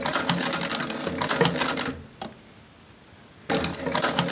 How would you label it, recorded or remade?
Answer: recorded